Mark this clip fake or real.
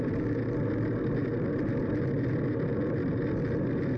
real